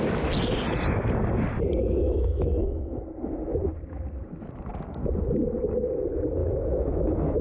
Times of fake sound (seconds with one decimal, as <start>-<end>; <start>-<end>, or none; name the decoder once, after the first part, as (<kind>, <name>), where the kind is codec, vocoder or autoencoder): 2.0-3.0 (autoencoder, DAC-VAE); 6.4-7.4